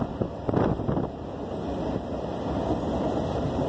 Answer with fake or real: real